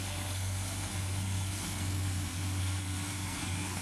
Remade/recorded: remade